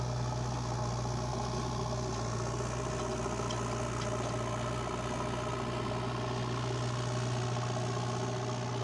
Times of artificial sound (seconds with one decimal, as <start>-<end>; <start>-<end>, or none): none